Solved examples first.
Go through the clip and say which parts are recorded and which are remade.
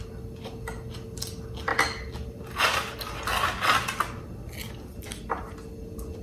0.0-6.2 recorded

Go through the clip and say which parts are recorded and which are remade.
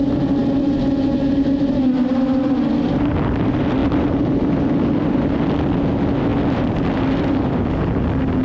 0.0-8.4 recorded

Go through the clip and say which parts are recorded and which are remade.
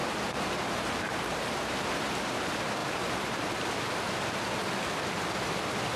0.0-1.7 remade; 1.7-2.8 recorded; 2.8-3.9 remade; 3.9-6.0 recorded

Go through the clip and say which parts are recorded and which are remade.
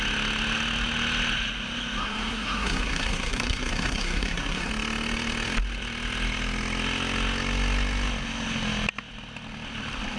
0.0-2.0 recorded; 2.0-4.7 remade; 4.7-10.2 recorded